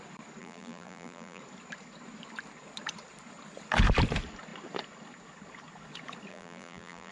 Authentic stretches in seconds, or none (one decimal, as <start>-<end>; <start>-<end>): 0.0-0.4; 1.4-6.3